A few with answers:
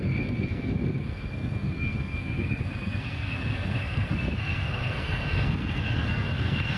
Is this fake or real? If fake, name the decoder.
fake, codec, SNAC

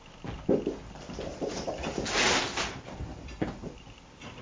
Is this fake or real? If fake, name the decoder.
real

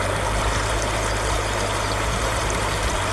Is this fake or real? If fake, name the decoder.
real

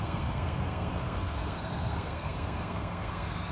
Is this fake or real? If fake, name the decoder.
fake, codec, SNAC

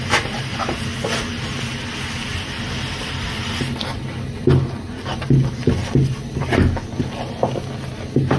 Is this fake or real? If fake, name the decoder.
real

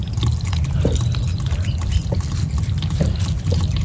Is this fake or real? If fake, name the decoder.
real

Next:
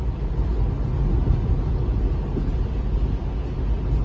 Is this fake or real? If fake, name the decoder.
real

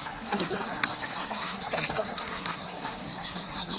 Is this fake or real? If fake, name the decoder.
fake, codec, SNAC